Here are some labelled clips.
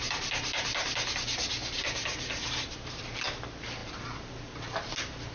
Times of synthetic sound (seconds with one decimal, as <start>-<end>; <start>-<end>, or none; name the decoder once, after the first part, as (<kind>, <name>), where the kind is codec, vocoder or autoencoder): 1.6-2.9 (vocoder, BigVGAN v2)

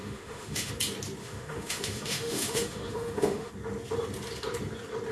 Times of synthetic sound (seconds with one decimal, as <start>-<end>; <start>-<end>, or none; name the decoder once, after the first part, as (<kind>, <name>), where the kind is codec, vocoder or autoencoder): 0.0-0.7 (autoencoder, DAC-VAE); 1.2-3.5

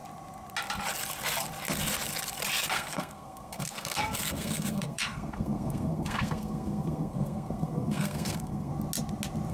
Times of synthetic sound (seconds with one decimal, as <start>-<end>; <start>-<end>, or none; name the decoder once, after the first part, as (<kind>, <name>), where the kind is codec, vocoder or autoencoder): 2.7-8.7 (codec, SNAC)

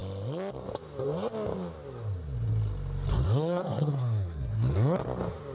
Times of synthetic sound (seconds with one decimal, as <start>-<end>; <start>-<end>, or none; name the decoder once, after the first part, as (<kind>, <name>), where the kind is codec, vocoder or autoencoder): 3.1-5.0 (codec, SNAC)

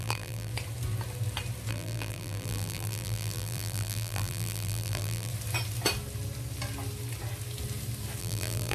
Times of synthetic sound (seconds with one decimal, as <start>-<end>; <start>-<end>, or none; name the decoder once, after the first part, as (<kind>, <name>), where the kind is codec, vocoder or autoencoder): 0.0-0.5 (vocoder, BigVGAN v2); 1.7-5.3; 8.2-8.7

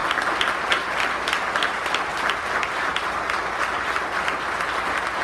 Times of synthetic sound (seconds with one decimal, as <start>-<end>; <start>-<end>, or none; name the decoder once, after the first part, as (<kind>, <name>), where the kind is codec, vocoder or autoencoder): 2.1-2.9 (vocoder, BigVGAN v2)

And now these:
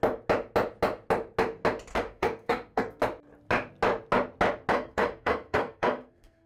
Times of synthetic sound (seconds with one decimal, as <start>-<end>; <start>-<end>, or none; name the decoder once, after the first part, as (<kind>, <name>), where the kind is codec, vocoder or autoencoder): 1.9-3.0 (codec, SNAC); 4.7-6.5